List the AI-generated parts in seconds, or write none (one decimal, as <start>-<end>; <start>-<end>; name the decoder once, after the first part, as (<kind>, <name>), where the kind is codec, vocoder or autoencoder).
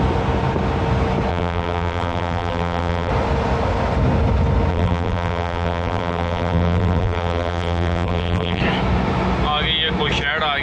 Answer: 1.3-3.1 (vocoder, BigVGAN v2); 4.7-8.6